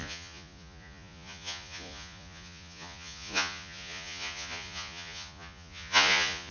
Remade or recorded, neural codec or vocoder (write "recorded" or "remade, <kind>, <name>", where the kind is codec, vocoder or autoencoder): remade, vocoder, Vocos